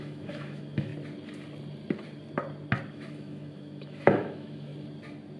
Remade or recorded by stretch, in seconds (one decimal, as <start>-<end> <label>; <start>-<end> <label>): 0.0-0.9 remade; 0.9-2.9 recorded; 2.9-4.7 remade; 4.7-5.4 recorded

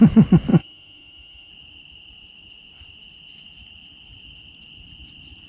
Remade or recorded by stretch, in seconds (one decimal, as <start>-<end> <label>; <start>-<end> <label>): 0.0-0.5 recorded; 0.5-1.5 remade; 1.5-5.5 recorded

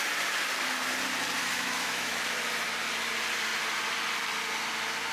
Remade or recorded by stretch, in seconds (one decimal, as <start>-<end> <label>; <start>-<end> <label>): 0.0-1.4 recorded; 1.4-2.2 remade; 2.2-5.1 recorded

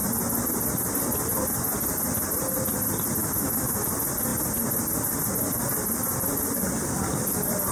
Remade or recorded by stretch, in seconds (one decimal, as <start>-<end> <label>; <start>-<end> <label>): 0.0-3.2 recorded; 3.2-3.9 remade; 3.9-7.7 recorded

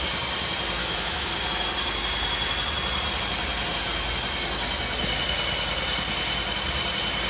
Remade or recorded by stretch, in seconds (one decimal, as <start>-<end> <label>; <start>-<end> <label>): 0.0-0.8 recorded; 0.8-1.3 remade; 1.3-7.3 recorded

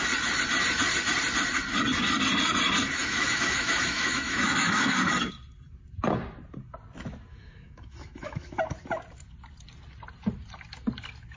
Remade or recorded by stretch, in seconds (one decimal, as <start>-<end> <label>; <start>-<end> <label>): 0.0-3.0 recorded; 3.0-5.1 remade; 5.1-7.3 recorded; 7.3-8.6 remade; 8.6-11.4 recorded